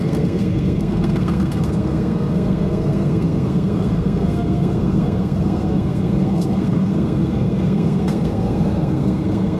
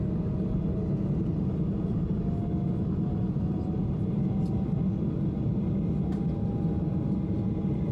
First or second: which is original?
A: second